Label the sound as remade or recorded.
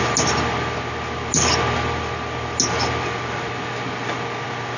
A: recorded